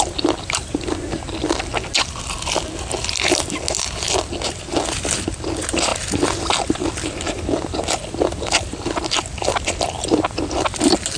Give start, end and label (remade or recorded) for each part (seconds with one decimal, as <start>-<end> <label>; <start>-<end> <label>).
0.0-11.2 recorded